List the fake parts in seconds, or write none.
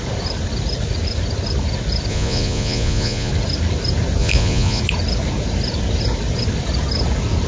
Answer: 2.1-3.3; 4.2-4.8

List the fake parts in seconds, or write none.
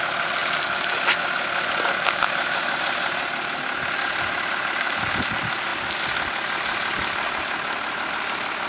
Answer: none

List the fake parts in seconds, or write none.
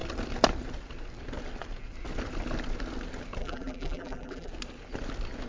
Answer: 3.4-4.5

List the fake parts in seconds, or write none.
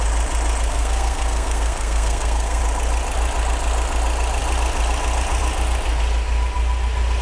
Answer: 0.7-2.6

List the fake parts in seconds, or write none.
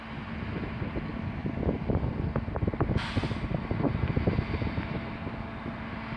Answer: none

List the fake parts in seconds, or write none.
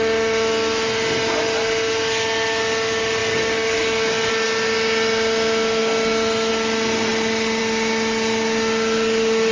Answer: 3.2-4.3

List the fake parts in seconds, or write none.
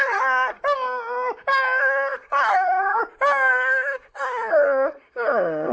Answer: 0.0-0.6; 1.8-3.0; 3.5-5.7